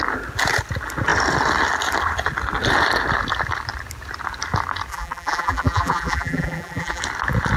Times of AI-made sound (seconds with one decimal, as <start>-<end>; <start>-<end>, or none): 4.9-7.0